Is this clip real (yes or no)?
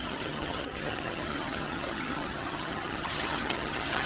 no